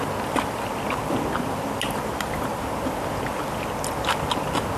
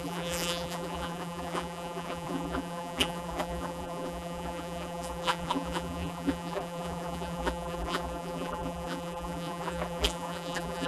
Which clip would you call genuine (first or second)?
first